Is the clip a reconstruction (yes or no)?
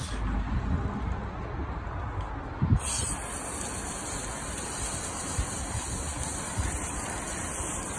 no